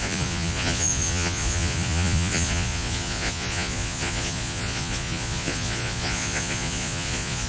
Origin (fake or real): fake